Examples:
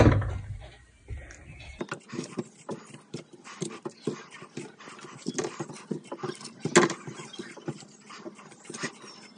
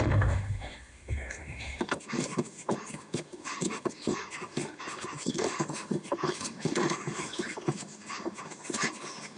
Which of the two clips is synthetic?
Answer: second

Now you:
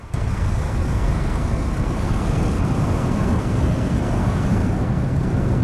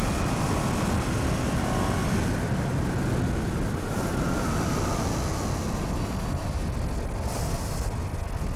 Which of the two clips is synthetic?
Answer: first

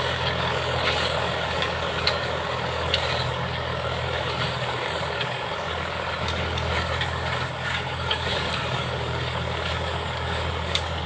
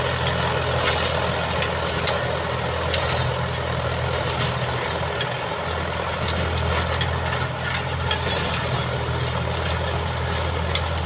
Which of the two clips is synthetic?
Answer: first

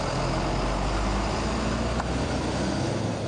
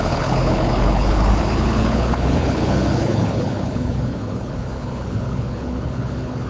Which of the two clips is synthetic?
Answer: second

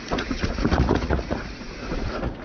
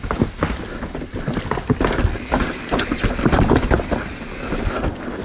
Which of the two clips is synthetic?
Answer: first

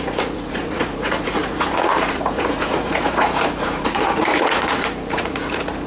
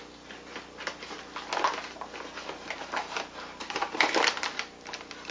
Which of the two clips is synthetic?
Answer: first